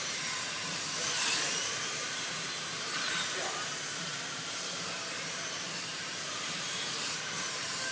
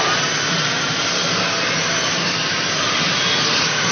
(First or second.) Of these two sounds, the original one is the second